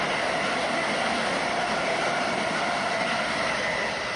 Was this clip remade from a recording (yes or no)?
no